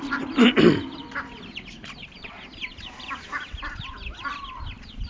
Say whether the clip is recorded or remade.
remade